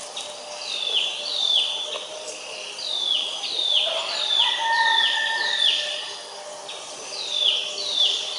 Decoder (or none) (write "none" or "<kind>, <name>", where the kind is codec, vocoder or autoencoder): none